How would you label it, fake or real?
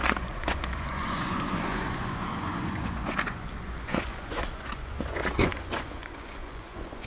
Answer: fake